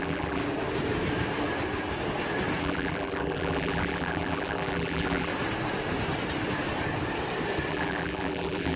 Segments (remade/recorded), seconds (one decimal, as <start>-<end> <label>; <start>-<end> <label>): 0.0-0.4 remade; 0.4-2.6 recorded; 2.6-5.3 remade; 5.3-7.7 recorded; 7.7-8.8 remade